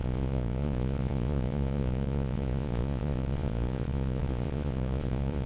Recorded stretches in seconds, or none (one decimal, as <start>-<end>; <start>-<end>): none

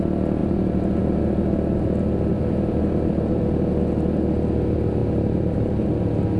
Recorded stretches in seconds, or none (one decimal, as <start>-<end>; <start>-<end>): 0.0-0.4; 1.0-2.3; 3.4-5.0; 5.9-6.4

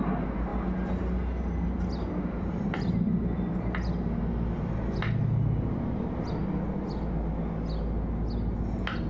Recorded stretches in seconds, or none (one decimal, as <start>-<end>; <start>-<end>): 0.0-9.1

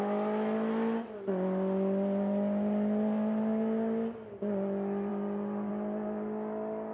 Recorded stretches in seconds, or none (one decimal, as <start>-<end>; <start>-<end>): 0.0-6.9

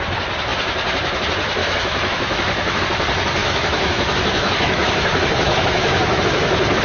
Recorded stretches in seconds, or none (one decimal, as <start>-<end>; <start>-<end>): 0.0-1.6; 2.8-3.4; 6.2-6.8

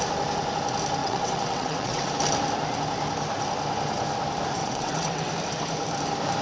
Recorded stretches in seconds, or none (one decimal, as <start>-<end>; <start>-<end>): 0.0-1.0; 2.1-4.6; 5.3-6.4

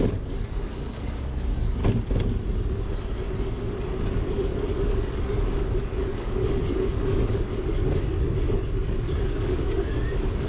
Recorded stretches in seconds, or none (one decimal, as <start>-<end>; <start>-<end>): 1.8-4.3